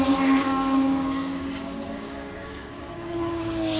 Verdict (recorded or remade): remade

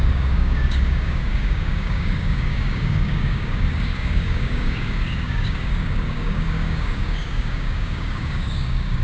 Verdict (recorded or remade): remade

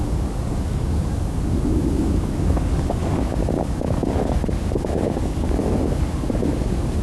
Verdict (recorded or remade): remade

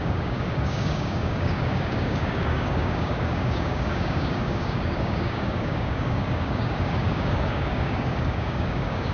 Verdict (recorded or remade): remade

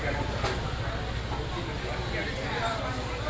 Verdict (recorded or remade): recorded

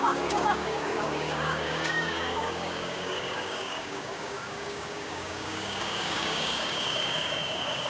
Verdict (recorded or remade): remade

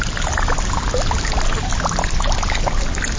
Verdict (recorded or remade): recorded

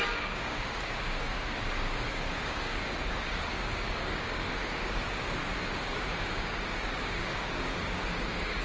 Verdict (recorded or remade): remade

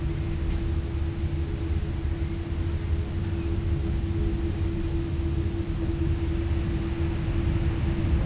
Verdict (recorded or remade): recorded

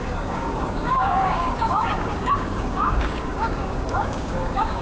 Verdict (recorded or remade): remade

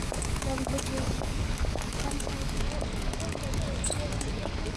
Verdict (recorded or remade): remade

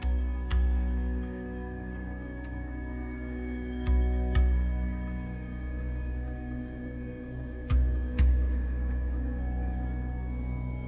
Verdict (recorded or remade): remade